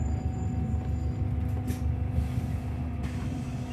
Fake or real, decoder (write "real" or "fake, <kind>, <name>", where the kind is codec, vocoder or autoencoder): real